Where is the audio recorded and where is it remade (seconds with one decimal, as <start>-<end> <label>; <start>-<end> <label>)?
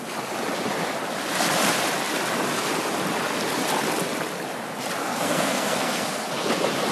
0.0-5.0 recorded; 5.0-6.5 remade; 6.5-6.9 recorded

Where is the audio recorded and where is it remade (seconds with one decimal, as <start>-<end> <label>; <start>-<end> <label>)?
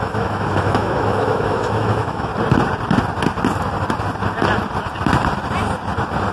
0.0-2.3 remade; 2.3-6.3 recorded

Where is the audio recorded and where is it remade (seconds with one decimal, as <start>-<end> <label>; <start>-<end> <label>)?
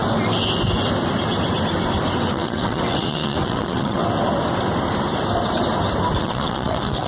0.0-2.3 recorded; 2.3-4.0 remade; 4.0-6.2 recorded; 6.2-7.1 remade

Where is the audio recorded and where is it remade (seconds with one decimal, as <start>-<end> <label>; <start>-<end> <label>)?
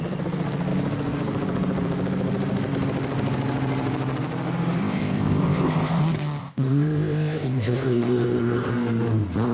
0.0-4.8 recorded; 4.8-6.0 remade; 6.0-6.4 recorded; 6.4-8.7 remade; 8.7-9.5 recorded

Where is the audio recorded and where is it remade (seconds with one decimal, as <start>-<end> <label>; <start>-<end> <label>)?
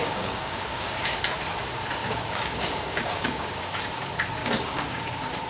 0.0-1.2 remade; 1.2-2.0 recorded; 2.0-3.8 remade; 3.8-4.4 recorded; 4.4-5.0 remade; 5.0-5.5 recorded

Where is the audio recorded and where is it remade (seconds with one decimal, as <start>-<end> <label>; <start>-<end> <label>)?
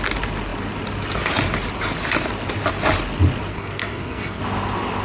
0.0-3.5 recorded; 3.5-4.4 remade; 4.4-5.0 recorded